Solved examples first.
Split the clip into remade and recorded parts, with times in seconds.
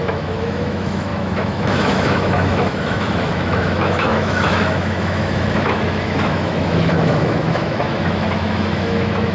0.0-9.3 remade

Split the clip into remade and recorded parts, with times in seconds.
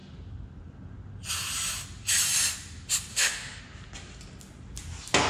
0.0-3.1 recorded; 3.1-3.6 remade; 3.6-5.3 recorded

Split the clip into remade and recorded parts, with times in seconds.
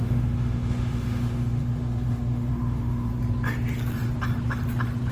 0.0-3.1 remade; 3.1-5.1 recorded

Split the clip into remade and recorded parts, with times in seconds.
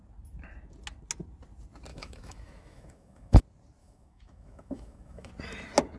0.0-1.9 recorded; 1.9-3.4 remade; 3.4-3.8 recorded; 3.8-5.3 remade; 5.3-6.0 recorded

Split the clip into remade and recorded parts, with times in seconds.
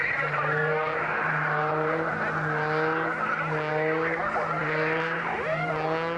0.0-2.1 remade; 2.1-4.6 recorded; 4.6-5.7 remade; 5.7-6.2 recorded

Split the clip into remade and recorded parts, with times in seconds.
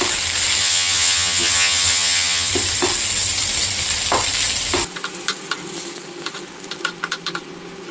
0.0-0.6 recorded; 0.6-2.5 remade; 2.5-7.9 recorded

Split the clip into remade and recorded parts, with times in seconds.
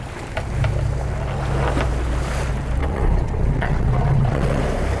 0.0-2.8 recorded; 2.8-4.6 remade; 4.6-5.0 recorded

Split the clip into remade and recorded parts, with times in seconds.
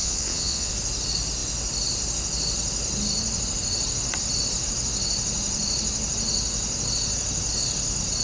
0.0-0.7 remade; 0.7-8.2 recorded